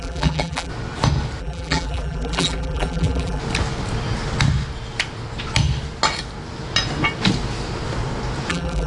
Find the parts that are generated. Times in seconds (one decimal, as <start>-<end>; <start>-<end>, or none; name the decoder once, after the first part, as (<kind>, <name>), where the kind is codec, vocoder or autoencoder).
0.0-0.7 (vocoder, BigVGAN v2); 1.4-3.4; 8.5-8.9